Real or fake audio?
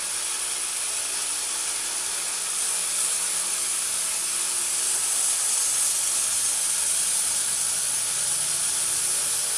real